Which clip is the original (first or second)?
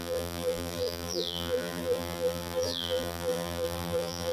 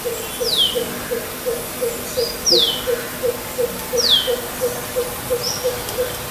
second